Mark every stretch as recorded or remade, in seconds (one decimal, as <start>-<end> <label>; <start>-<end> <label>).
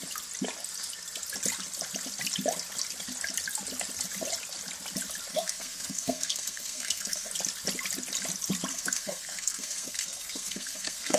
0.0-5.3 recorded; 5.3-7.3 remade; 7.3-8.7 recorded; 8.7-11.2 remade